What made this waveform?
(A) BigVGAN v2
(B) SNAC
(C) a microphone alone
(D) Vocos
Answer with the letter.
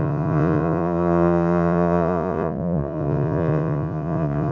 D